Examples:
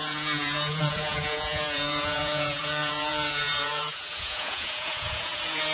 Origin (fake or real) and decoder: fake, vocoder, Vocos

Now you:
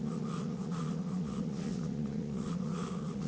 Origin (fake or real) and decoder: fake, vocoder, Vocos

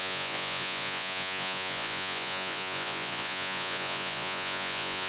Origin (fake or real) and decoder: fake, vocoder, Vocos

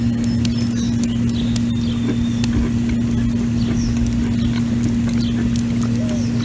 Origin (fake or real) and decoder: real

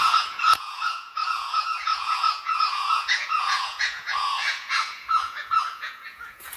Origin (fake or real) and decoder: fake, vocoder, Vocos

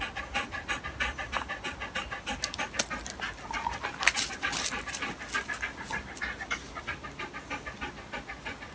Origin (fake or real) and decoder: real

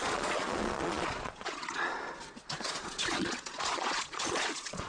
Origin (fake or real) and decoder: fake, vocoder, Vocos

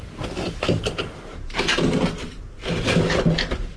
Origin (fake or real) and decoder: real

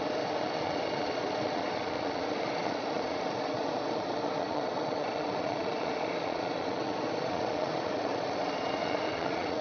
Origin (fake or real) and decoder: fake, vocoder, Vocos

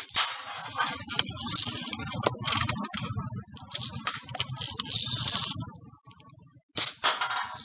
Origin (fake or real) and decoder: real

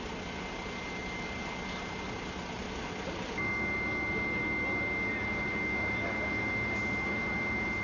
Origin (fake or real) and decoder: real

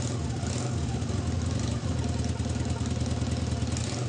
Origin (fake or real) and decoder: real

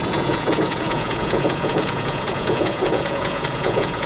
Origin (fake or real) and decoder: fake, vocoder, Vocos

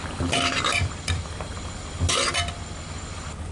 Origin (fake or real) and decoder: real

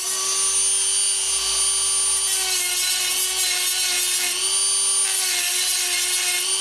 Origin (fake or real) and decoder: real